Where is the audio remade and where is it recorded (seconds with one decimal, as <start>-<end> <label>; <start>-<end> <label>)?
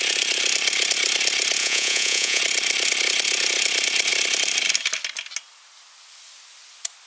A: 0.0-1.6 recorded; 1.6-2.4 remade; 2.4-7.1 recorded